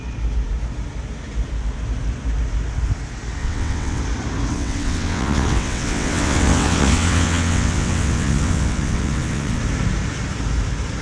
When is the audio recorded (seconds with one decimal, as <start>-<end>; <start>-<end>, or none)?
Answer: 0.0-3.4; 4.0-4.5; 9.6-11.0